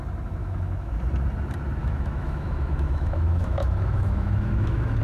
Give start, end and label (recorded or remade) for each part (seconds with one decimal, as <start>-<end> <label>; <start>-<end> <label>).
0.0-0.4 recorded; 0.4-0.9 remade; 0.9-1.8 recorded; 1.8-5.0 remade